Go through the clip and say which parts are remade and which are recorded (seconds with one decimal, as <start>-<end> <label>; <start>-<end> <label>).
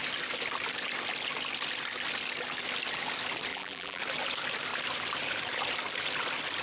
0.0-3.5 recorded; 3.5-4.0 remade; 4.0-6.6 recorded